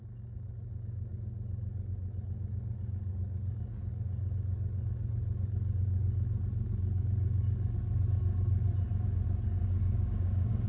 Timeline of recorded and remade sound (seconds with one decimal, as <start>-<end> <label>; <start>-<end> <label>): 0.0-9.6 recorded; 9.6-10.7 remade